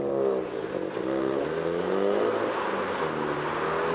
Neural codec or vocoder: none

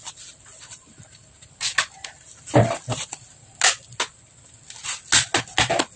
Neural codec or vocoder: none